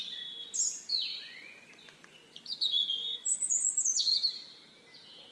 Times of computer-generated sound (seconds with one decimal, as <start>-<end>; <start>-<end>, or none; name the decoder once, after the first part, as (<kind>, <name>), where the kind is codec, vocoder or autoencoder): 1.1-4.3 (vocoder, Vocos)